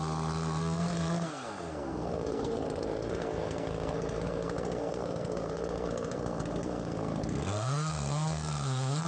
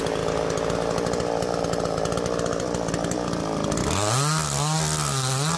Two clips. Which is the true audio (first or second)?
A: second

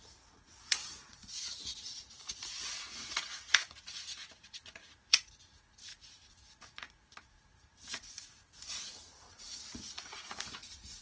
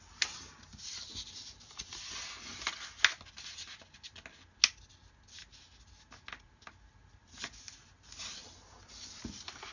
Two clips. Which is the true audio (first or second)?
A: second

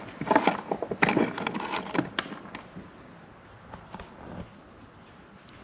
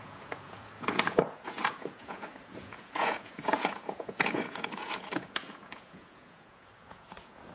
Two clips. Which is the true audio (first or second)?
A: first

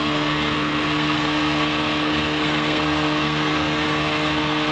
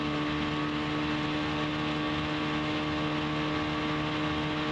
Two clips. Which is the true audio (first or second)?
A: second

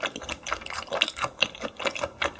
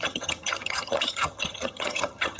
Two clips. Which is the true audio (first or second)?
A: first